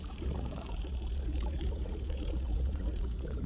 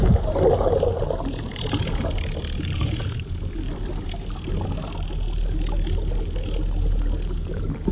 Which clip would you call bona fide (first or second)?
second